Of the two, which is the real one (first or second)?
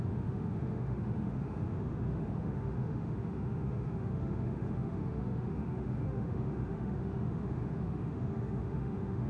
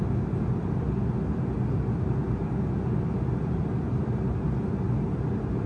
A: second